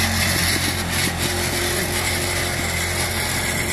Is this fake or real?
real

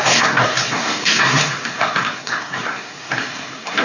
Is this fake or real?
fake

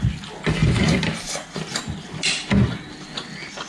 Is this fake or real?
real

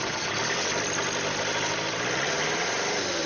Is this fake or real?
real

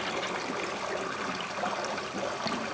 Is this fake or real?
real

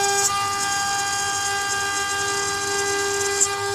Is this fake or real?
real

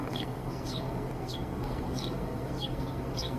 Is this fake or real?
fake